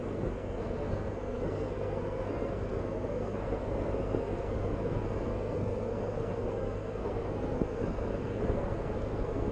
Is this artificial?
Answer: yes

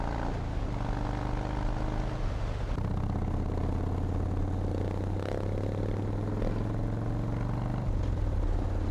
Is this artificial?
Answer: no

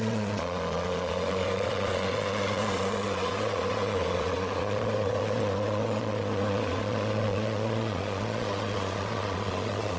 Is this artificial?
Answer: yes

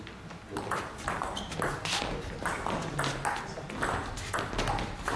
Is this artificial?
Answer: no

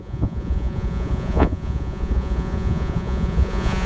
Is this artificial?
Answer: yes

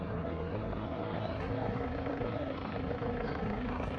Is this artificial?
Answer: yes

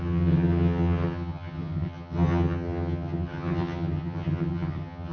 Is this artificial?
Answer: yes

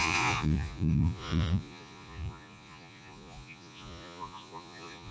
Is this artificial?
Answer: yes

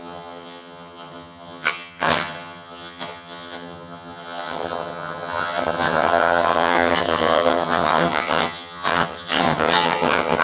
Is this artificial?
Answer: yes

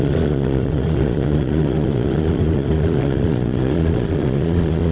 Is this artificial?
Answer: yes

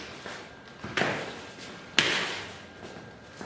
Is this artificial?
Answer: no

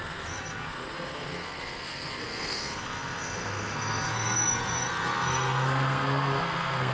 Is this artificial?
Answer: yes